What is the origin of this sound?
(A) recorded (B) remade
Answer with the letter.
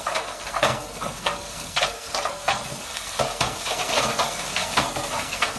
B